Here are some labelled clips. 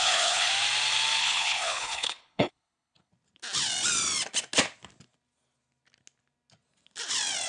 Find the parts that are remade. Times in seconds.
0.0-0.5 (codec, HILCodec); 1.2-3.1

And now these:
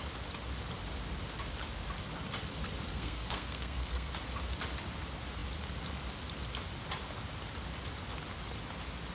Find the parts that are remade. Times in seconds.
2.9-4.1 (codec, SNAC)

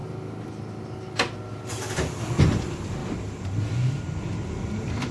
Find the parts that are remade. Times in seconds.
none

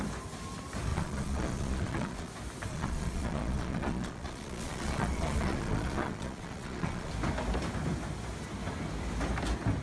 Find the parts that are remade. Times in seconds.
0.9-2.3 (vocoder, Vocos); 2.7-7.1